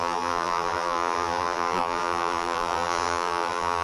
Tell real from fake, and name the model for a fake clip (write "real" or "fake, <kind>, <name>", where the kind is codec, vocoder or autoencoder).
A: fake, vocoder, BigVGAN v2